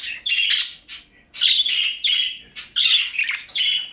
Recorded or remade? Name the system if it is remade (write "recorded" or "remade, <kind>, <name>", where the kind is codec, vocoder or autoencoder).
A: recorded